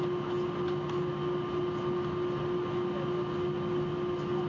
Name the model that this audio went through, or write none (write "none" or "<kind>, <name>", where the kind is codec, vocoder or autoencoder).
none